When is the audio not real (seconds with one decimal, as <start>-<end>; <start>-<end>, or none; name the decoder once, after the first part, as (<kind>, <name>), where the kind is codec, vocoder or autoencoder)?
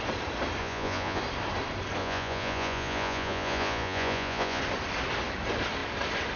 0.6-1.2 (vocoder, Vocos); 2.0-4.6